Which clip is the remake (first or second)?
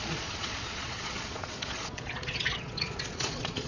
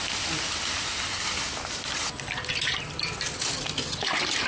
first